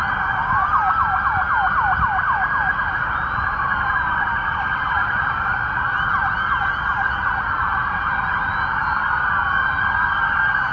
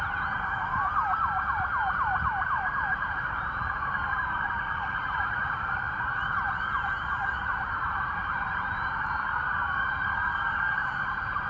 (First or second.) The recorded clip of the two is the first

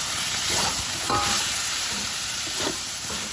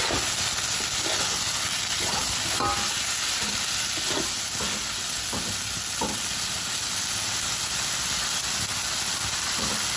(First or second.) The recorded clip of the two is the second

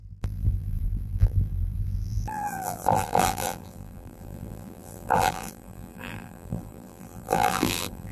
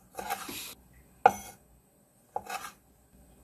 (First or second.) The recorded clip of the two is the second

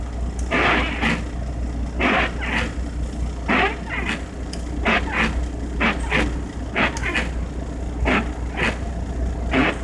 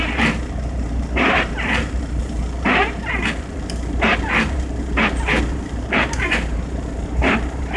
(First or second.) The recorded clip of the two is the first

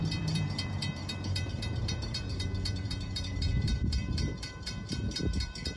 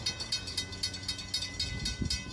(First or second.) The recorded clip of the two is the second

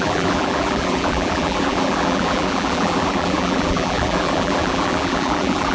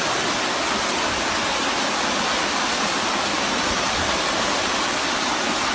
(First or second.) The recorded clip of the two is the second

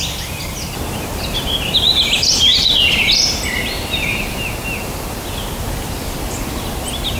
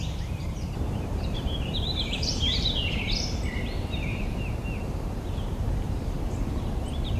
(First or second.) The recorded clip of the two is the first